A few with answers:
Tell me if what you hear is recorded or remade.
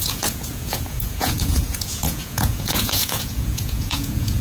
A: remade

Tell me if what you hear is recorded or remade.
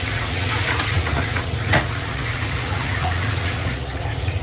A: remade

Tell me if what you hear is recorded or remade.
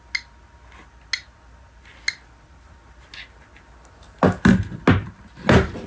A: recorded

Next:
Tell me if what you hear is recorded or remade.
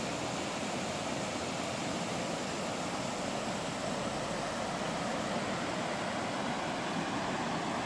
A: recorded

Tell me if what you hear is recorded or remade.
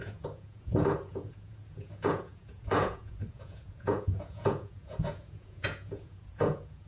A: remade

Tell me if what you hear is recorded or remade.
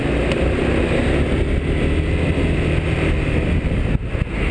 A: recorded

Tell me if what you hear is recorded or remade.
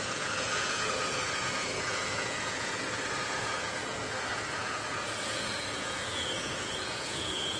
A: remade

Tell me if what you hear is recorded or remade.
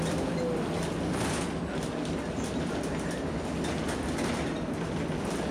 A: recorded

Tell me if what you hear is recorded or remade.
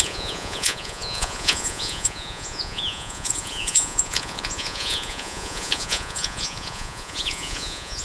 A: remade